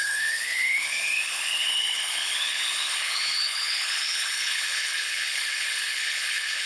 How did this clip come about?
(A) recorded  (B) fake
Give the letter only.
B